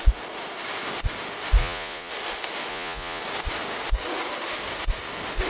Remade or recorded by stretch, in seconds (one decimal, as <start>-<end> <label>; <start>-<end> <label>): 0.0-1.6 recorded; 1.6-2.1 remade; 2.1-2.7 recorded; 2.7-3.2 remade; 3.2-5.5 recorded